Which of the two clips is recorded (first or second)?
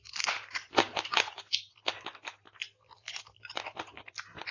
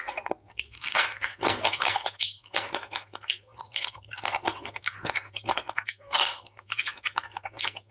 first